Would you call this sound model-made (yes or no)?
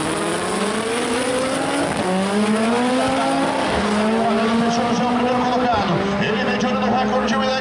no